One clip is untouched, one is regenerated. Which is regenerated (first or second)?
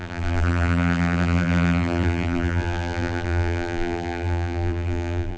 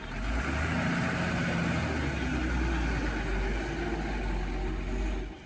first